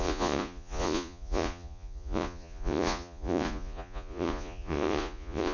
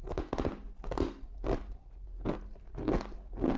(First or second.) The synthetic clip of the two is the first